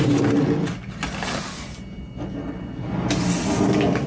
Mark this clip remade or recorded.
recorded